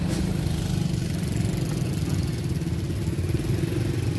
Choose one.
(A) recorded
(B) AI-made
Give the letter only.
A